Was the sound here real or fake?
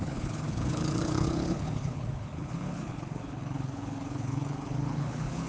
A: fake